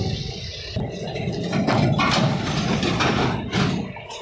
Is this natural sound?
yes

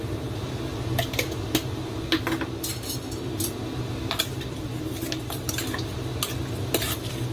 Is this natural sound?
yes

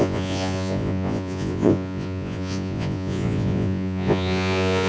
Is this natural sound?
no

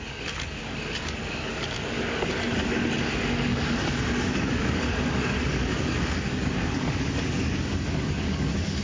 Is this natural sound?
no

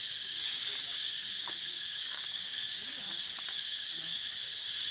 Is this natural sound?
no